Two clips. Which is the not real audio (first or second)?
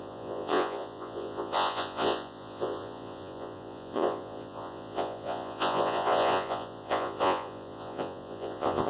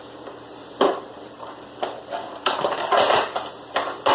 first